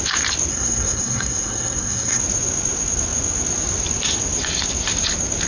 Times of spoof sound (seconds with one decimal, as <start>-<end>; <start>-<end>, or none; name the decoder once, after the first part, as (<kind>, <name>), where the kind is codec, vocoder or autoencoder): 0.5-2.2 (codec, SNAC)